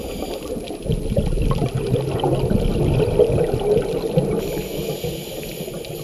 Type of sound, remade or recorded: recorded